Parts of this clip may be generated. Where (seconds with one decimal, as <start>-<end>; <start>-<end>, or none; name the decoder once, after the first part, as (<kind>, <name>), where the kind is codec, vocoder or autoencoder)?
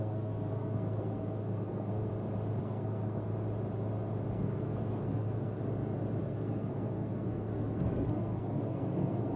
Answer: 0.0-2.1 (codec, SNAC); 2.6-3.3; 4.3-5.6; 6.2-9.4